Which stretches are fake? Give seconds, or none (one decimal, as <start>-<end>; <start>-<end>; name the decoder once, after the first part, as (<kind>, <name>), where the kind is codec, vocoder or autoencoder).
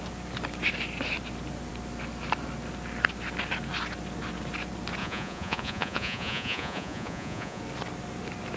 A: 5.0-7.6 (vocoder, Vocos)